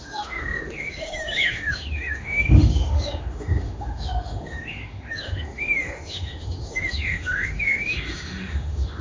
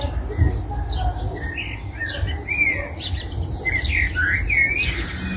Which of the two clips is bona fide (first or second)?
second